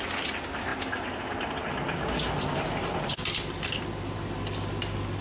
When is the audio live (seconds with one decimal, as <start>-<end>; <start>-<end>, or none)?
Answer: 0.0-5.2